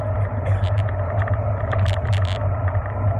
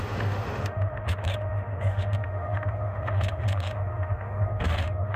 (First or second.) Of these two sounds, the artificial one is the second